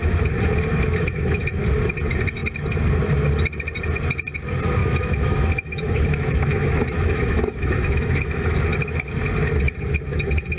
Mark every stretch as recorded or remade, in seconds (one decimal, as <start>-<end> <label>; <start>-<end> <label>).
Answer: 0.0-0.7 recorded; 0.7-1.4 remade; 1.4-4.8 recorded; 4.8-8.6 remade; 8.6-10.6 recorded